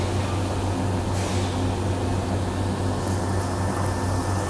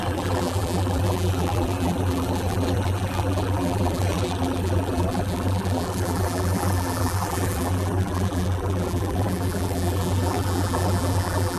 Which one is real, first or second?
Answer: first